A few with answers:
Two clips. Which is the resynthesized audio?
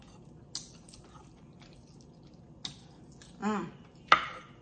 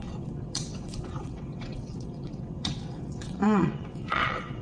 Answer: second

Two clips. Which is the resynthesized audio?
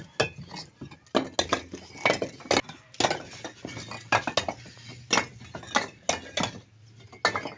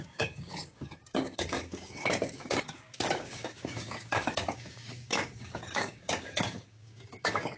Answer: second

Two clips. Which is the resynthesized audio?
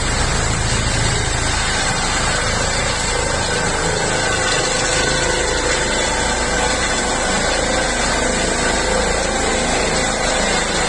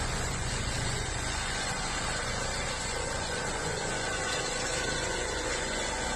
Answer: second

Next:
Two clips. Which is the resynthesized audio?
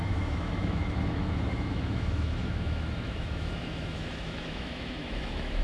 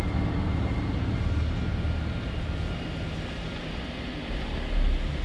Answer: first